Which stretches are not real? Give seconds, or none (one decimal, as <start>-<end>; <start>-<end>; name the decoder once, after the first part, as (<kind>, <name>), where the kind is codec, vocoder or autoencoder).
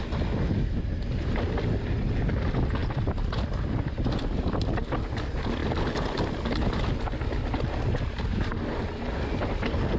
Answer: none